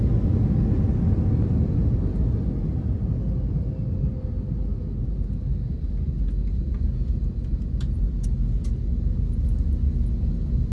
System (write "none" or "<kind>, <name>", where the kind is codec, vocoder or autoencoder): none